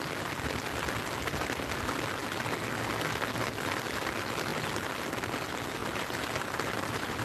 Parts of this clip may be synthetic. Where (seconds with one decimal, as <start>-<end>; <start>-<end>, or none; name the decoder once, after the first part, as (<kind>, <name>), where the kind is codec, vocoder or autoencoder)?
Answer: none